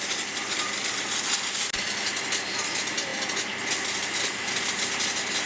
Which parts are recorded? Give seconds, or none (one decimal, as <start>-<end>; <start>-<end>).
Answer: 0.0-5.5